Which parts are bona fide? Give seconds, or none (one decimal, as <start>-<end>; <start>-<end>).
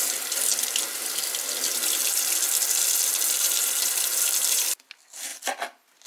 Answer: 5.3-6.1